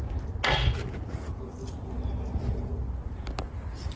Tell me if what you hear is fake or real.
real